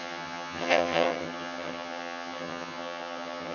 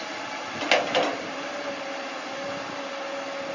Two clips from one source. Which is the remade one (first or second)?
first